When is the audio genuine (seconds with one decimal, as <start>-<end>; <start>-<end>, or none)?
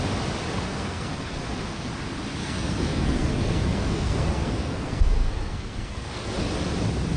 0.0-0.7; 1.9-2.4; 6.3-7.2